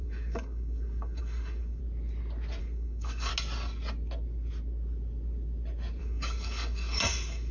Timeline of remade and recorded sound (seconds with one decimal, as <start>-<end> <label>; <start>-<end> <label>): 0.0-1.8 remade; 1.8-2.6 recorded; 2.6-3.3 remade; 3.3-6.0 recorded; 6.0-7.5 remade